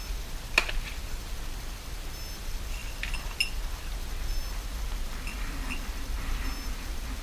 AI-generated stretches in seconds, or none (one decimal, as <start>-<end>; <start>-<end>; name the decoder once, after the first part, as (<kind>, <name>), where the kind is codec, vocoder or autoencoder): none